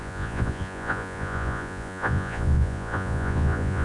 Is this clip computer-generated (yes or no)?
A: yes